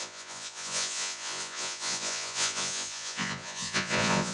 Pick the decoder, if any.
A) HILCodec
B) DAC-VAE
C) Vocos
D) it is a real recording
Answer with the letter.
C